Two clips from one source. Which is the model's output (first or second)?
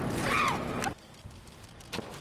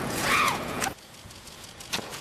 second